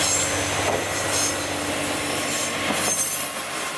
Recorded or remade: recorded